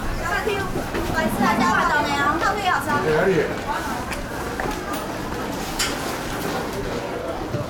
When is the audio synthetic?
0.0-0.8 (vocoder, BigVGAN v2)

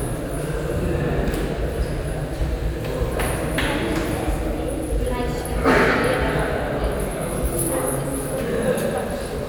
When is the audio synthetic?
none

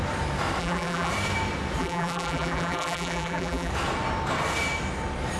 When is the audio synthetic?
0.6-1.1 (vocoder, BigVGAN v2); 1.8-3.7

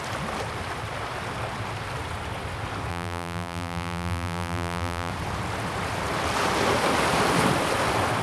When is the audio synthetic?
2.9-5.1 (vocoder, BigVGAN v2)

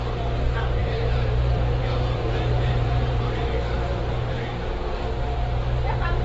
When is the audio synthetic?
0.0-6.2 (vocoder, BigVGAN v2)

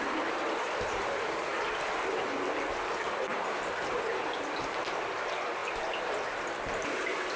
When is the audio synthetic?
1.5-2.3 (vocoder, BigVGAN v2)

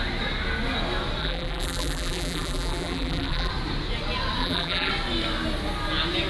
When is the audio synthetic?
1.2-3.5 (vocoder, BigVGAN v2); 4.4-4.9